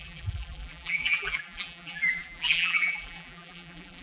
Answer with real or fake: fake